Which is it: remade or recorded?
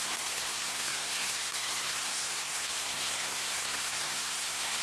remade